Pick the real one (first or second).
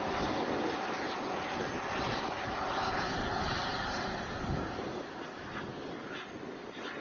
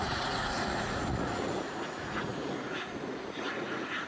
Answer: first